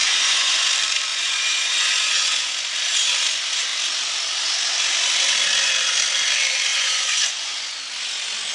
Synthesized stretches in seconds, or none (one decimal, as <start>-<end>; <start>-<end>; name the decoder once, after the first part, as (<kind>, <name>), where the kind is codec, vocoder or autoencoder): 0.0-0.7 (vocoder, Vocos); 1.1-2.5; 6.7-7.8